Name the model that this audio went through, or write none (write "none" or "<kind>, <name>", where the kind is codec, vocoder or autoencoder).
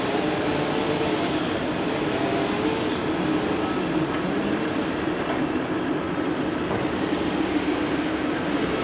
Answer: none